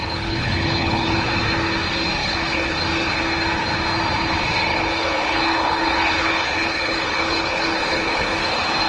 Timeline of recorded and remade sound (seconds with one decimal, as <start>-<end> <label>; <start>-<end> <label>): 0.0-1.3 remade; 1.3-2.2 recorded; 2.2-2.8 remade; 2.8-4.7 recorded; 4.7-8.5 remade; 8.5-8.9 recorded